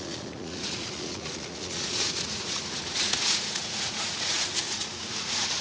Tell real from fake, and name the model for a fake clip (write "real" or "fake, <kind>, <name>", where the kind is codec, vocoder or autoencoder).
fake, vocoder, Vocos